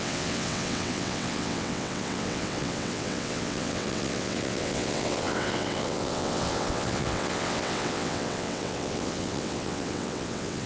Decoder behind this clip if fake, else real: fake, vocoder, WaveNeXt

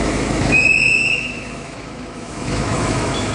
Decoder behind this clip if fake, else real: fake, autoencoder, DAC-VAE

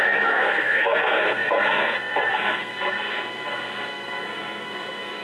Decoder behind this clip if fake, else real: fake, codec, SNAC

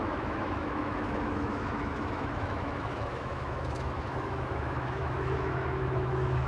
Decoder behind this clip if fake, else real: fake, autoencoder, DAC-VAE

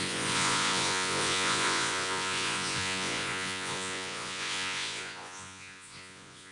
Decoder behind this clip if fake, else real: fake, vocoder, Vocos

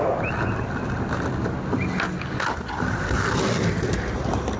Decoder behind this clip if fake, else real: real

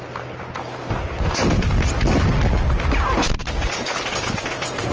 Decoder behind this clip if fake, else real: real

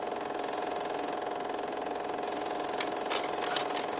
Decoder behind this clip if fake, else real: real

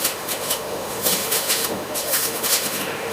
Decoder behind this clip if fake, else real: fake, autoencoder, DAC-VAE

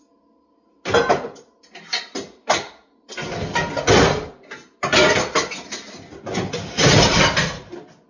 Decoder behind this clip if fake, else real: real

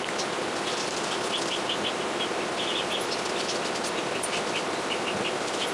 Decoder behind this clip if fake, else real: real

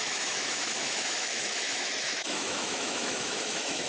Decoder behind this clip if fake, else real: fake, autoencoder, DAC-VAE